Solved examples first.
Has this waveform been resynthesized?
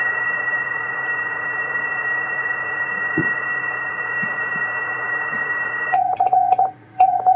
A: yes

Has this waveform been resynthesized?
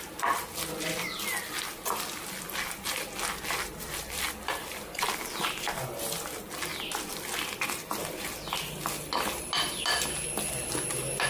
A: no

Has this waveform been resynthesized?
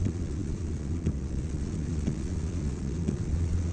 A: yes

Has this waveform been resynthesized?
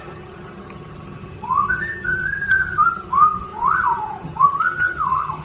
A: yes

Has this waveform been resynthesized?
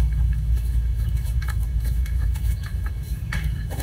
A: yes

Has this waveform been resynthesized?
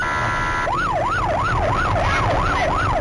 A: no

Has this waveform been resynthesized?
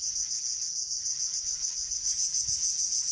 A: yes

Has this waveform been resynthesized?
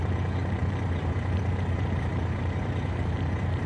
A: yes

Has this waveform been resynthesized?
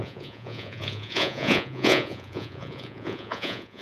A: yes